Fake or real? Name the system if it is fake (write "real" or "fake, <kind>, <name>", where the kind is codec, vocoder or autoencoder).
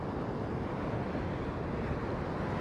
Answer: real